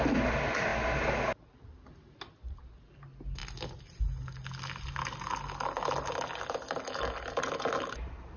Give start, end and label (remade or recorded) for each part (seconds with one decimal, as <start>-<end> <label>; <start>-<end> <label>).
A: 0.0-8.4 recorded

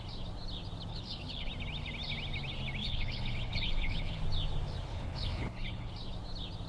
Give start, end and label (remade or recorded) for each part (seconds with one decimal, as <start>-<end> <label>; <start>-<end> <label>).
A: 0.0-0.9 recorded; 0.9-1.5 remade; 1.5-2.8 recorded; 2.8-4.2 remade; 4.2-4.9 recorded; 4.9-5.9 remade; 5.9-6.7 recorded

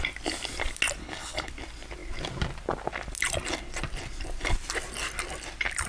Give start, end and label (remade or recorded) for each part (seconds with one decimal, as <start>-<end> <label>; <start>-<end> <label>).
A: 0.0-1.0 recorded; 1.0-1.5 remade; 1.5-5.9 recorded

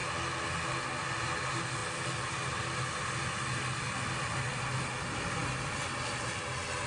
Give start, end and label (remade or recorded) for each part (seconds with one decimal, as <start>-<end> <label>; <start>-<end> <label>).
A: 0.0-6.9 recorded

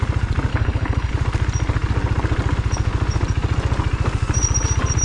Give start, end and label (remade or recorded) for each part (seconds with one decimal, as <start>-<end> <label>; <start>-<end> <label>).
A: 0.0-0.5 recorded; 0.5-1.1 remade; 1.1-5.0 recorded

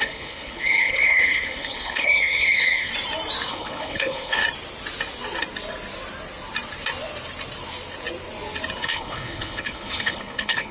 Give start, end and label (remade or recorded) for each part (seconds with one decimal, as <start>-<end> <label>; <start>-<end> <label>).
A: 0.0-2.9 remade; 2.9-3.5 recorded; 3.5-4.4 remade; 4.4-8.8 recorded; 8.8-10.7 remade

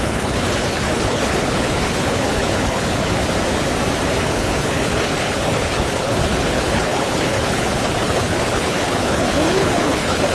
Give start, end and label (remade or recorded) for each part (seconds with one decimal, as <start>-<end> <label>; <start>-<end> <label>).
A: 0.0-3.2 remade; 3.2-4.2 recorded; 4.2-10.3 remade

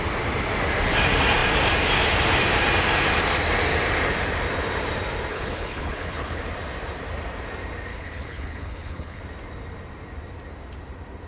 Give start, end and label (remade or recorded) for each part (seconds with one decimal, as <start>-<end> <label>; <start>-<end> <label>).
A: 0.0-5.3 recorded; 5.3-6.4 remade; 6.4-7.9 recorded; 7.9-9.2 remade; 9.2-11.3 recorded